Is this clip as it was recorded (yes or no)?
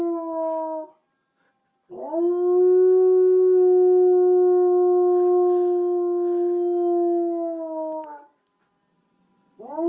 yes